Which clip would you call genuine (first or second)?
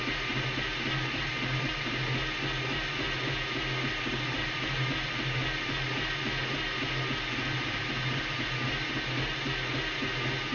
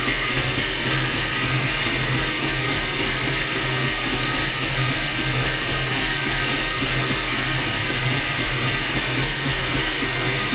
first